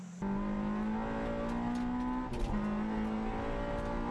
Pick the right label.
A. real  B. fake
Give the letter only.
A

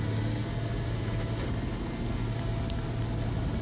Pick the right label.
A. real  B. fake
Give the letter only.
A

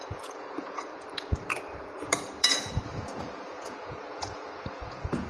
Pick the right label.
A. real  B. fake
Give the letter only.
B